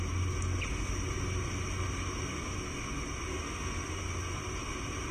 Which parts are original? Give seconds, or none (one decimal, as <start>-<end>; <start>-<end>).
0.0-3.3; 4.0-5.1